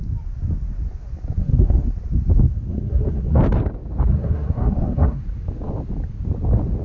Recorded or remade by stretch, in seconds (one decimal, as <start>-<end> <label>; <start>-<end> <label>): 0.0-1.4 recorded; 1.4-1.9 remade; 1.9-2.5 recorded; 2.5-3.4 remade; 3.4-4.1 recorded; 4.1-5.2 remade; 5.2-6.8 recorded